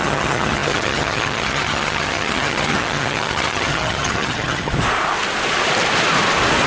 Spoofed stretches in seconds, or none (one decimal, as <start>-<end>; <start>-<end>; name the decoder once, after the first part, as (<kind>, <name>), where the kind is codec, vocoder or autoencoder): 0.0-4.7 (vocoder, HiFi-GAN)